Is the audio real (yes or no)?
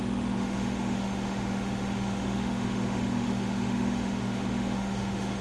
no